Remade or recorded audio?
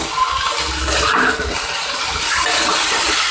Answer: recorded